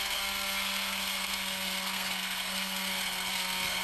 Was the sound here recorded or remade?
remade